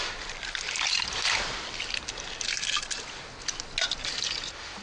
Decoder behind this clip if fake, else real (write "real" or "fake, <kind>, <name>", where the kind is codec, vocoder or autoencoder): real